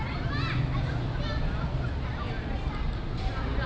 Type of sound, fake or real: real